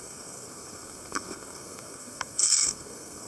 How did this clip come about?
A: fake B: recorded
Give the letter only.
A